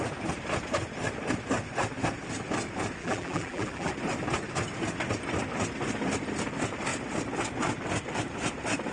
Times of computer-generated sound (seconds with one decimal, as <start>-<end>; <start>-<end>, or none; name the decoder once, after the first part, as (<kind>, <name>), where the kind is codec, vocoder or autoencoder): 3.0-3.9 (vocoder, BigVGAN v2)